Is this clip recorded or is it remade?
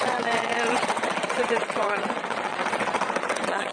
remade